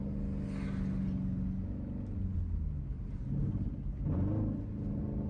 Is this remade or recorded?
recorded